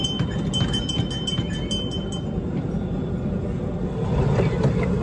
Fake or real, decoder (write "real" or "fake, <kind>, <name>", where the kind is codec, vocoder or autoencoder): real